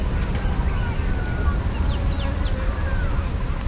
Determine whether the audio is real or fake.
real